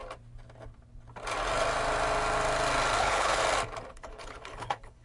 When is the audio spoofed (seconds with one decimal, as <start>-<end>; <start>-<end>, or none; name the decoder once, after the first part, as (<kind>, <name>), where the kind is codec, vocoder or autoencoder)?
3.0-3.4 (codec, HILCodec); 3.9-5.0